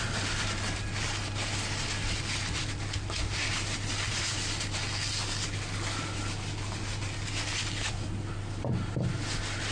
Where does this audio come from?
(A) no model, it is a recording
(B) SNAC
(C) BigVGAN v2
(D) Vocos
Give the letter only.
A